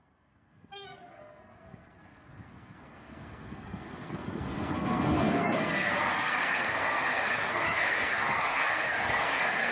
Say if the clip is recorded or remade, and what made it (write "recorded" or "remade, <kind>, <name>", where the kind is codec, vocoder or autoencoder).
remade, codec, SNAC